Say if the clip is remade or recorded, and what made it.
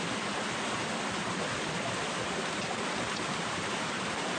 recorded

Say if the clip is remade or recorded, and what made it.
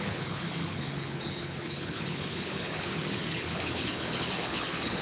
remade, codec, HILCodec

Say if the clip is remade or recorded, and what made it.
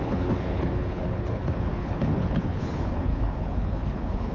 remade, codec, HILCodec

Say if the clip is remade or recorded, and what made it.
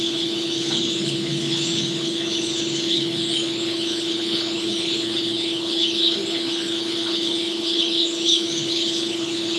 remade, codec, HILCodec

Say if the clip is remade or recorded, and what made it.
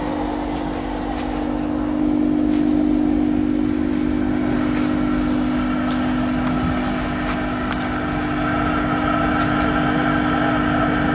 recorded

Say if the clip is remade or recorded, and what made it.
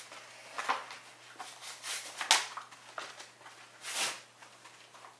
recorded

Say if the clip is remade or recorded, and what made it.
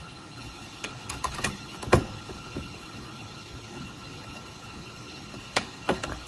remade, codec, HILCodec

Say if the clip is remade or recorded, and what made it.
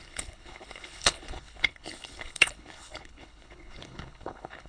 remade, codec, HILCodec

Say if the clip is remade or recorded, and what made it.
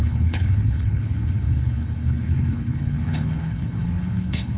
remade, codec, HILCodec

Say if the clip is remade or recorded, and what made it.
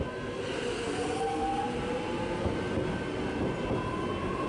recorded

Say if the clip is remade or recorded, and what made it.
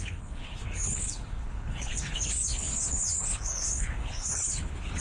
remade, codec, HILCodec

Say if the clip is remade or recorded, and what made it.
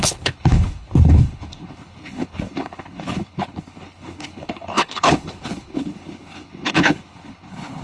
remade, codec, HILCodec